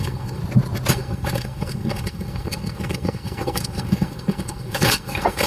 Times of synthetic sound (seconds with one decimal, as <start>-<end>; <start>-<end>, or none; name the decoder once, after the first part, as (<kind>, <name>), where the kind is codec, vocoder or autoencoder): 0.0-0.4 (codec, SNAC); 0.9-5.5